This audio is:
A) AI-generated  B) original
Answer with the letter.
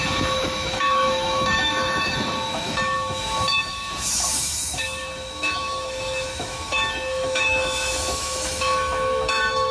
A